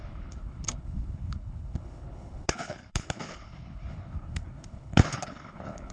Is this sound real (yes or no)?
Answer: no